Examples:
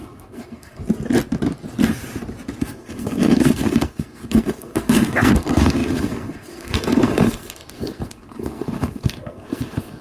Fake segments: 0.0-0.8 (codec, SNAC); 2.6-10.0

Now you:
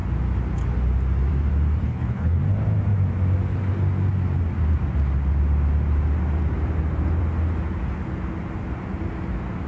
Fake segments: 1.8-2.4 (codec, HILCodec)

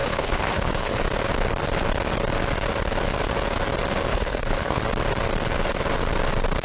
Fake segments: 0.0-1.0 (codec, HILCodec); 4.1-4.8

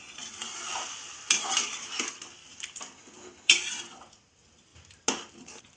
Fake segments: 0.0-0.4 (vocoder, BigVGAN v2); 3.0-4.7; 5.3-5.8

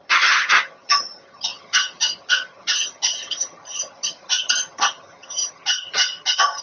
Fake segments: 0.0-6.6 (vocoder, HiFi-GAN)